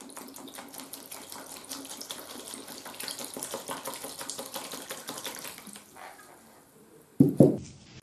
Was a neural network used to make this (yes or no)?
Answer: no